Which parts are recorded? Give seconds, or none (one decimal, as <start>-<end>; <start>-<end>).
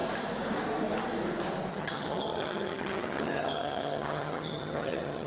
0.0-1.7